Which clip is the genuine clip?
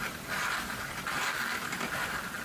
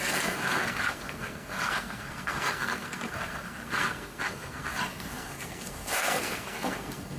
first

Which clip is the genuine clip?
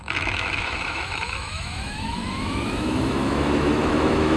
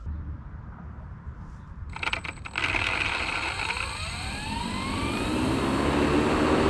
second